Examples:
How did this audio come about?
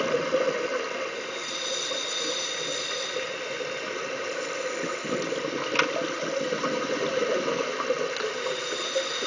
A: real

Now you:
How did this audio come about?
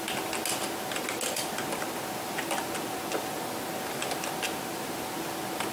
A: real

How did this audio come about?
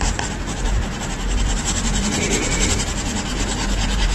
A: fake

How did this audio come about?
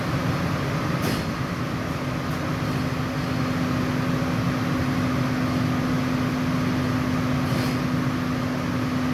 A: real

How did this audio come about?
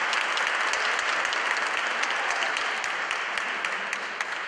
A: real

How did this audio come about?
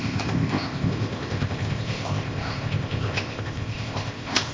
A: fake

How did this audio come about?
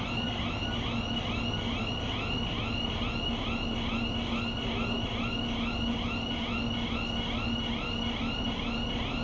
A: real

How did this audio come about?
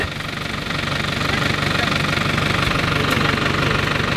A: real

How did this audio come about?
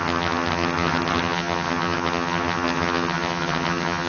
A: fake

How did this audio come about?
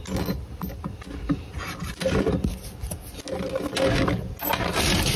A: real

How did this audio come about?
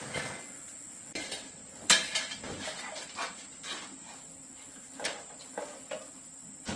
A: real